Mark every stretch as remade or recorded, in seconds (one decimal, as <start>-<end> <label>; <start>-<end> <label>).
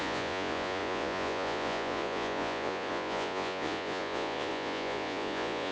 0.0-5.7 remade